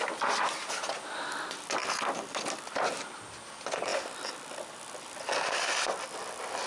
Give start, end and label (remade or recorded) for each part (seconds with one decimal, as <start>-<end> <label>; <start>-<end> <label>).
0.0-6.7 recorded